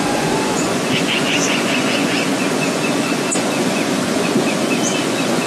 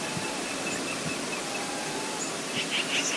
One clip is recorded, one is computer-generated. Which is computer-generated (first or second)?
first